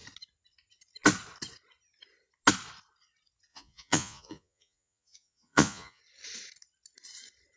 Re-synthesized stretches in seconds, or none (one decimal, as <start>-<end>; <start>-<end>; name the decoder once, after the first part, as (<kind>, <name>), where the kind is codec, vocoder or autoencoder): 3.5-6.0 (vocoder, Vocos)